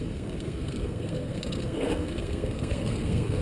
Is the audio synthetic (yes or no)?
yes